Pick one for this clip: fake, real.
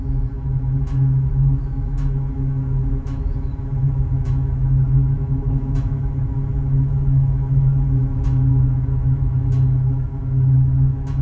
fake